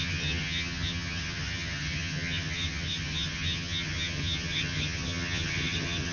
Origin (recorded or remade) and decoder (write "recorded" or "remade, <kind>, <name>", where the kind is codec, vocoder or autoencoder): remade, vocoder, HiFi-GAN